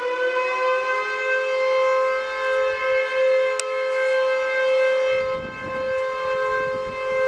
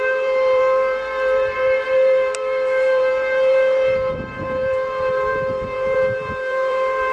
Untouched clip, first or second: first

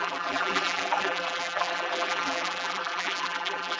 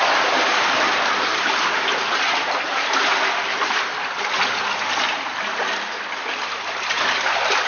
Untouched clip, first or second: second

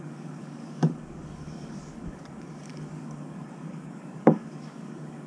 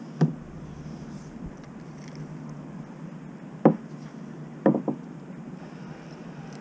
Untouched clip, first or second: second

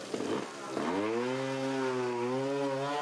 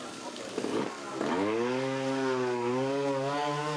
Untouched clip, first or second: first